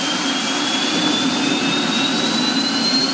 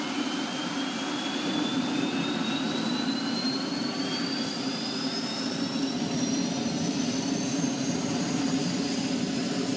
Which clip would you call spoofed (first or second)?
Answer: second